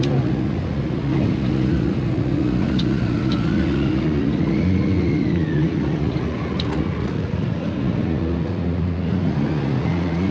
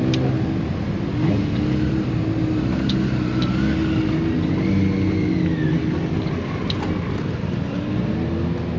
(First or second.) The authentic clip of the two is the second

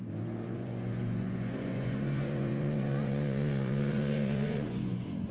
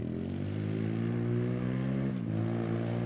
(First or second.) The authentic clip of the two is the second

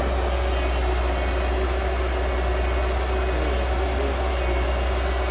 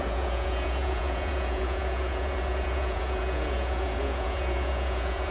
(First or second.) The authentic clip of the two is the first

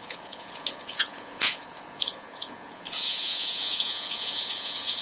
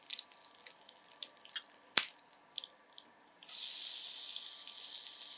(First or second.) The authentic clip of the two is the second